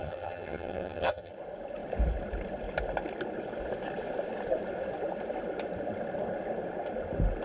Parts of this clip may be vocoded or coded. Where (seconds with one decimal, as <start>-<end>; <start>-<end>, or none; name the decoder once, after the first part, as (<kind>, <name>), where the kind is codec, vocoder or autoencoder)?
0.0-1.3 (vocoder, HiFi-GAN)